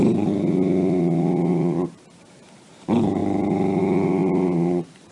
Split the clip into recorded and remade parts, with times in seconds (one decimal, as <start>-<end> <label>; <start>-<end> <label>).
0.0-3.2 remade; 3.2-3.8 recorded; 3.8-5.1 remade